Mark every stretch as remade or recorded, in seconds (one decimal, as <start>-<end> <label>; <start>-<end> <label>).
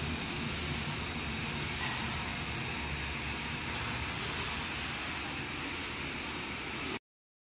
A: 0.0-7.4 recorded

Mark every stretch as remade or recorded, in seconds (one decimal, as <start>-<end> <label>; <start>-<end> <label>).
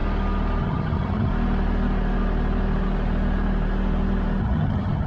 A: 0.0-0.6 recorded; 0.6-1.3 remade; 1.3-4.4 recorded; 4.4-5.1 remade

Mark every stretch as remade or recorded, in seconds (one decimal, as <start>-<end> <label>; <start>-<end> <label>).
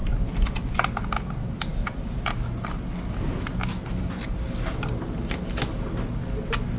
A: 0.0-6.8 recorded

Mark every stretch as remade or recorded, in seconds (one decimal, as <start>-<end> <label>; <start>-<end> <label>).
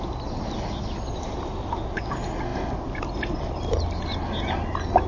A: 0.0-5.1 recorded